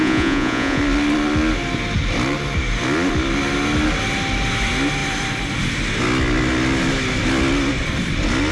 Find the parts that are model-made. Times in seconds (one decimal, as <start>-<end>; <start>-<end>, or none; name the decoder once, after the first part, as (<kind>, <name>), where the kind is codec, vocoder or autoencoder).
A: 0.0-0.8 (vocoder, Vocos)